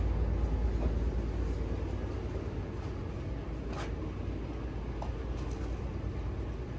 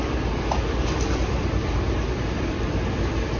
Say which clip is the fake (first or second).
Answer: second